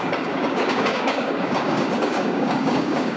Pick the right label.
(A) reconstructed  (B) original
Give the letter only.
A